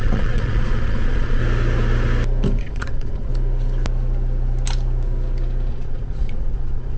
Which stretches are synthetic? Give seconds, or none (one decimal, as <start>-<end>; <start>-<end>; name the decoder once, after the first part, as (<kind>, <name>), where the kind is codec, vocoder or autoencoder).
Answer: 0.0-1.4 (vocoder, Vocos); 2.6-3.3; 5.7-7.0